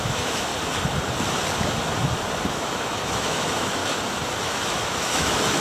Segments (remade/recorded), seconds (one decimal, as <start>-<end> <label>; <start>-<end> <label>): 0.0-0.5 remade; 0.5-2.5 recorded; 2.5-3.8 remade; 3.8-4.4 recorded; 4.4-5.6 remade